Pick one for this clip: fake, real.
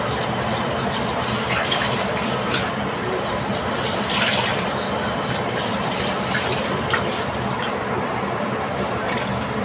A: real